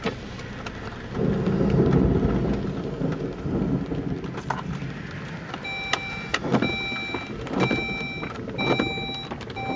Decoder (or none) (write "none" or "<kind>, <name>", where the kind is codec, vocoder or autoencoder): none